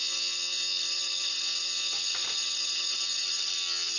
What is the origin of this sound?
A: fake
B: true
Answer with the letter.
B